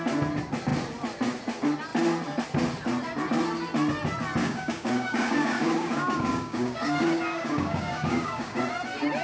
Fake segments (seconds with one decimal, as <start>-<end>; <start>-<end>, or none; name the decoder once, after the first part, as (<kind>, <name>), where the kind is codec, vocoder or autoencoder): 4.4-8.6 (codec, DAC)